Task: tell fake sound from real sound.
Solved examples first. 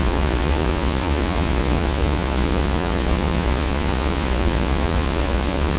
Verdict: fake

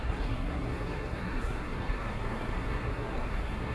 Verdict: fake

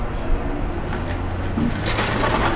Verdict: real